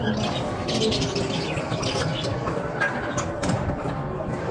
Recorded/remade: recorded